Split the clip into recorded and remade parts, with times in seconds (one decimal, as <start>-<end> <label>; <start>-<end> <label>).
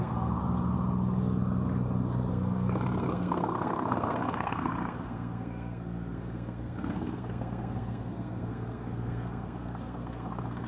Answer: 0.0-0.4 remade; 0.4-2.3 recorded; 2.3-10.7 remade